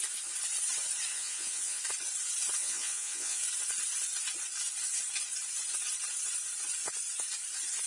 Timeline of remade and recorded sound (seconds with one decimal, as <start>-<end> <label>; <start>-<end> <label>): 0.0-1.1 recorded; 1.1-1.8 remade; 1.8-2.6 recorded; 2.6-3.4 remade; 3.4-7.9 recorded